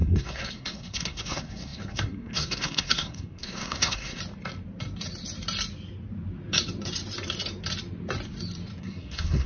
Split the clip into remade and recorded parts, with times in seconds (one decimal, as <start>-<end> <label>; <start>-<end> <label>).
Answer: 0.0-4.2 remade; 4.2-8.8 recorded; 8.8-9.5 remade